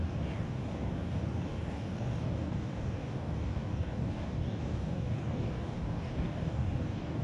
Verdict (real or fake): fake